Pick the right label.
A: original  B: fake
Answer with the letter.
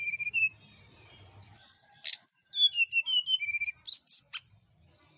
A